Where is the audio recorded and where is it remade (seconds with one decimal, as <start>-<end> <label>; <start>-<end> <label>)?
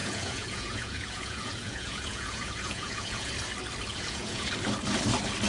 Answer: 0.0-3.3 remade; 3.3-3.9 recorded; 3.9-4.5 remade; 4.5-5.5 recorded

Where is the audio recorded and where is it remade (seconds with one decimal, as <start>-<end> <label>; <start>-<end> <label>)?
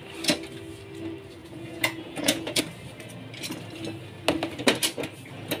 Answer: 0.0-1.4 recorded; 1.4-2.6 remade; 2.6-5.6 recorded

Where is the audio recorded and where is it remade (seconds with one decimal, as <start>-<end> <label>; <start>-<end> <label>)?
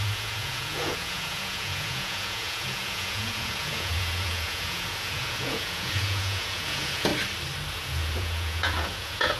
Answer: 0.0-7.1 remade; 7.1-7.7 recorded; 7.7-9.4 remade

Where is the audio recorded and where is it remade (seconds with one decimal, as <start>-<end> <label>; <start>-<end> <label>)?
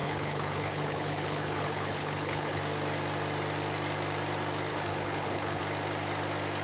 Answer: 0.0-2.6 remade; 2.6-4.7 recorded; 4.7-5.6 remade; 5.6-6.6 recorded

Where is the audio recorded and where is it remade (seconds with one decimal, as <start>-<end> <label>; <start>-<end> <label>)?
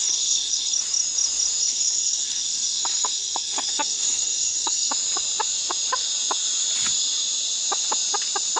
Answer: 0.0-0.7 remade; 0.7-1.7 recorded; 1.7-4.9 remade; 4.9-8.6 recorded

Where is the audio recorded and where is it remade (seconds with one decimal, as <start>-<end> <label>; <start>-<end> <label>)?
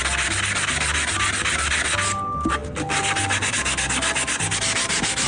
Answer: 0.0-5.3 recorded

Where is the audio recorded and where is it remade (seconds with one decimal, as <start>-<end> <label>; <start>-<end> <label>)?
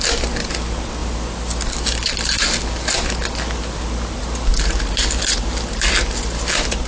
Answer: 0.0-6.9 recorded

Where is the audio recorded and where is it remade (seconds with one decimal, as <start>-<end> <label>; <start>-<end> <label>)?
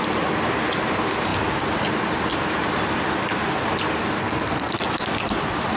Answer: 0.0-4.2 recorded; 4.2-4.7 remade; 4.7-5.8 recorded